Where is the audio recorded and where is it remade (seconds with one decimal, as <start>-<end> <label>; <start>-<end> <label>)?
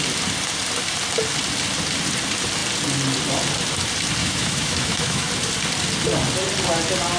0.0-4.2 recorded; 4.2-5.3 remade; 5.3-7.2 recorded